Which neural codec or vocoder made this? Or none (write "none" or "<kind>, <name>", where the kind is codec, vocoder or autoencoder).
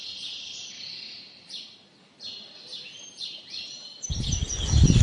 none